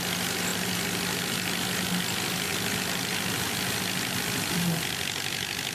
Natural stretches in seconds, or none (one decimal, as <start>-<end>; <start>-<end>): 0.0-5.7